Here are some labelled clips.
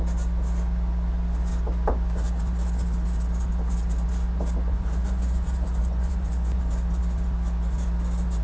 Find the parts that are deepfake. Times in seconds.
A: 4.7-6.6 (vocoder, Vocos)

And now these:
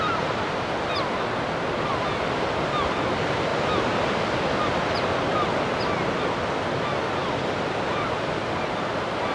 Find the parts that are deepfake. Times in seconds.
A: 7.2-8.6 (vocoder, BigVGAN v2)

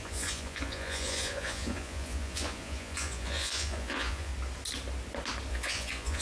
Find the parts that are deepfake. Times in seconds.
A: 0.0-4.3 (vocoder, Vocos); 5.5-6.2

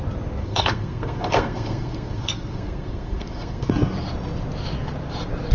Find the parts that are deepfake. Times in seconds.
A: 0.4-3.7 (codec, SNAC)

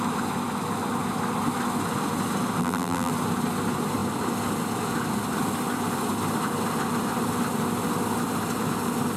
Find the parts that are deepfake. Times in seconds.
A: 2.6-3.1 (vocoder, BigVGAN v2)

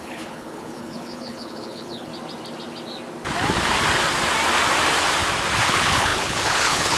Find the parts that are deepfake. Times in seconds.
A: 0.0-2.1 (codec, HILCodec); 5.6-7.0

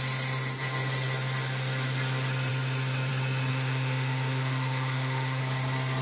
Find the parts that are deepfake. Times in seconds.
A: 3.5-5.4 (autoencoder, DAC-VAE)

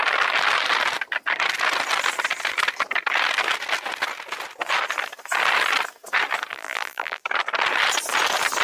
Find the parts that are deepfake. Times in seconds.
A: 6.5-7.2 (vocoder, BigVGAN v2)